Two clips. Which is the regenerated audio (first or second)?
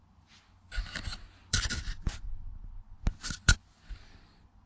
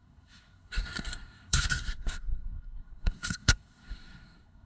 second